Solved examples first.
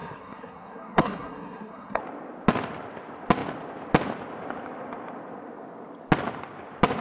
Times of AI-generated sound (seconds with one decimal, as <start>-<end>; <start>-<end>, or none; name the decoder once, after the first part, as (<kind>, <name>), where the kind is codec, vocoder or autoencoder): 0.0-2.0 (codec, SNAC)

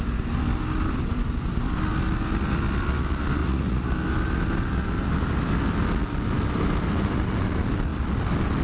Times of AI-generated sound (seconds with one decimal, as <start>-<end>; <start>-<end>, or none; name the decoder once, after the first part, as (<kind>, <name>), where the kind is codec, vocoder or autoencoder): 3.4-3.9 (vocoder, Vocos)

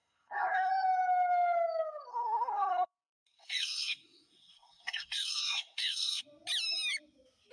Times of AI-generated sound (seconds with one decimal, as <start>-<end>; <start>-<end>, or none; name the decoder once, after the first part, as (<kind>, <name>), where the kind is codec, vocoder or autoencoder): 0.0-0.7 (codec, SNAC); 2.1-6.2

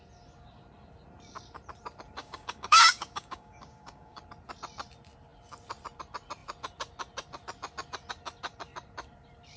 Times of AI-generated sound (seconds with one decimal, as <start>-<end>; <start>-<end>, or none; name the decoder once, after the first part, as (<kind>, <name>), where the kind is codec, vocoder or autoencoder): 2.2-4.2 (codec, DAC)

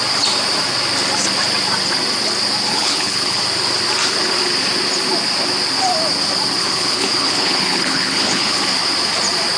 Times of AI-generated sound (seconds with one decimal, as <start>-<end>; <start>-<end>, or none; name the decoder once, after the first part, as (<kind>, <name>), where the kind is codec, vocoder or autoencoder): 2.7-3.4 (codec, HILCodec); 6.6-8.6